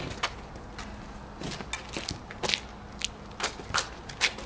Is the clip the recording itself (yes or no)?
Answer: yes